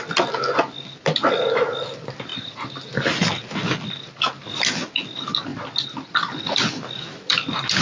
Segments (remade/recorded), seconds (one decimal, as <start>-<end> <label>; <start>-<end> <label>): 0.0-7.8 recorded